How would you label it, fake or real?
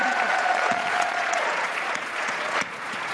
fake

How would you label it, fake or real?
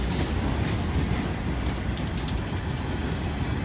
real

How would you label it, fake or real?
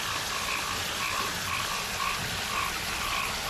real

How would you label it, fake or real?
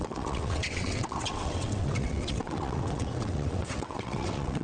fake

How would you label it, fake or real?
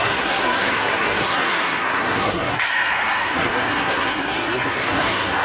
fake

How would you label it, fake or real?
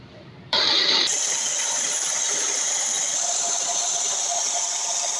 fake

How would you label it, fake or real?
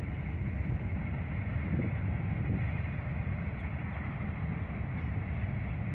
real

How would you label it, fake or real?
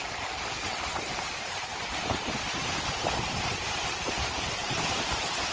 fake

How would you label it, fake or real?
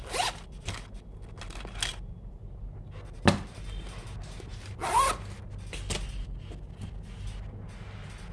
real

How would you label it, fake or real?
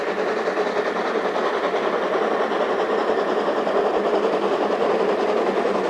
real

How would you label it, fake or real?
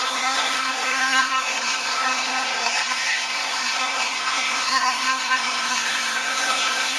fake